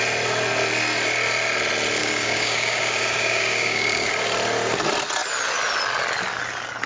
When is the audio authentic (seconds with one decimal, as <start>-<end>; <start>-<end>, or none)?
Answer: 0.0-2.0; 4.1-6.9

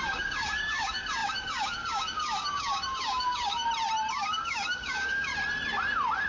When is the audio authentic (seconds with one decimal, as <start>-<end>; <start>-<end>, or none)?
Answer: 3.6-4.1; 5.3-6.3

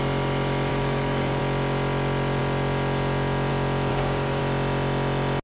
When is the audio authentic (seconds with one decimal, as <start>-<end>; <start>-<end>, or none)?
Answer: 0.0-0.7; 1.4-3.9; 4.4-5.4

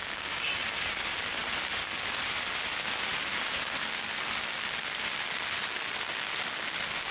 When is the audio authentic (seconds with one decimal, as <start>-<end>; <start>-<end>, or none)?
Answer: 0.5-7.1

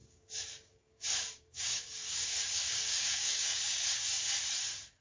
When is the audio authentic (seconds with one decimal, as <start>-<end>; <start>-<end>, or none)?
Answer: 4.1-5.0

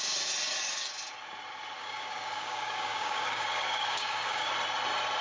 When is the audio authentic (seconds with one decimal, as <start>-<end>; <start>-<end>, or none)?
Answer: 0.0-1.8; 4.5-5.2

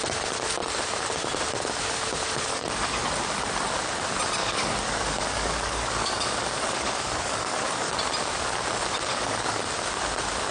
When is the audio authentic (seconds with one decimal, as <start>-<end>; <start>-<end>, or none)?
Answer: 0.0-2.5; 3.1-4.4; 7.9-9.1; 9.7-10.5

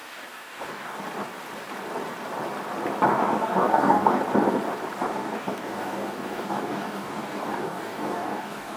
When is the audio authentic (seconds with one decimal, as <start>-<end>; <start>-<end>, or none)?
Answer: 1.0-3.1; 4.2-5.0